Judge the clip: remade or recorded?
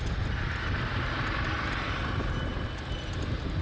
recorded